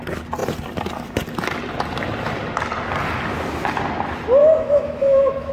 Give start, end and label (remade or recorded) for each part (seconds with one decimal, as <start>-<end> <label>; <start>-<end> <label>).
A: 0.0-4.4 recorded; 4.4-5.5 remade